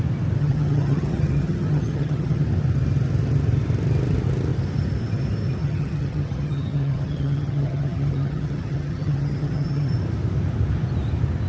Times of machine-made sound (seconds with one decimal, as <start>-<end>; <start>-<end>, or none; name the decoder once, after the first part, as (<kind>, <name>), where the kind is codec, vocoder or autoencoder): 0.4-2.4 (vocoder, HiFi-GAN); 5.6-9.9